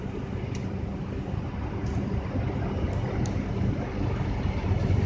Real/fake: real